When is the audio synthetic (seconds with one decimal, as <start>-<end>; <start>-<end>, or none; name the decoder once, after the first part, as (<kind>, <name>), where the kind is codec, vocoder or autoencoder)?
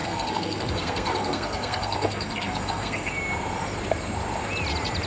0.0-3.1 (codec, SNAC)